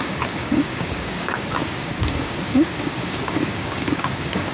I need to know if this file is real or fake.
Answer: fake